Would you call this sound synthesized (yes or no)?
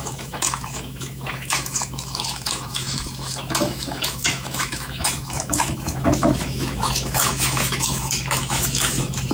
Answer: yes